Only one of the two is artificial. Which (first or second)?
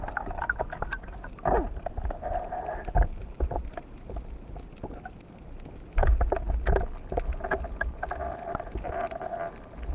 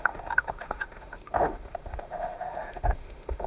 second